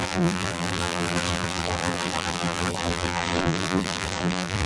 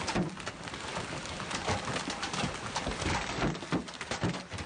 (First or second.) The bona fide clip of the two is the second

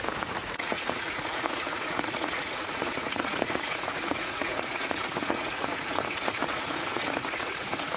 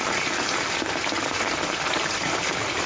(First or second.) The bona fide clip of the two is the second